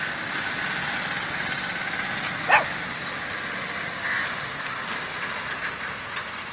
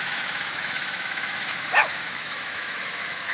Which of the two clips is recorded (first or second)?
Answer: first